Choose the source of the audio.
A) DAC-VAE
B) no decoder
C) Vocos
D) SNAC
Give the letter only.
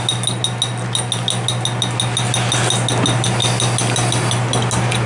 B